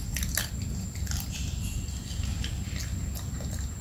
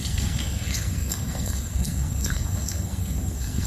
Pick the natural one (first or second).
first